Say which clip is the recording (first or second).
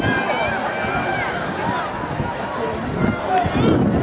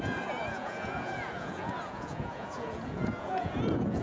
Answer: first